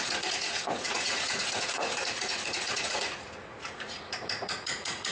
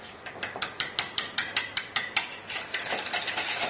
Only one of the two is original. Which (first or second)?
second